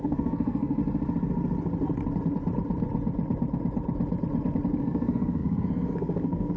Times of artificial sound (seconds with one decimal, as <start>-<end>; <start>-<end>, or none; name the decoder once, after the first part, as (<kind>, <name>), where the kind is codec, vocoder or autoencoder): 0.0-0.8 (codec, SNAC); 4.8-6.6